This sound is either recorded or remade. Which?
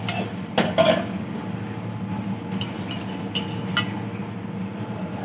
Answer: recorded